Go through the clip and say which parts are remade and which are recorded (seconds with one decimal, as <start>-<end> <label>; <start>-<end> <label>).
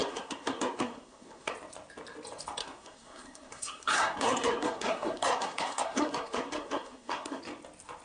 0.0-1.5 remade; 1.5-2.6 recorded; 2.6-7.4 remade; 7.4-8.0 recorded